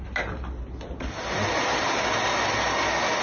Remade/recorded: recorded